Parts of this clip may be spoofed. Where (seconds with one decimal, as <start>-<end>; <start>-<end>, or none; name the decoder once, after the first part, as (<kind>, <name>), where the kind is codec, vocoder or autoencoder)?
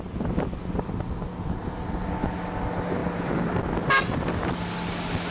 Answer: none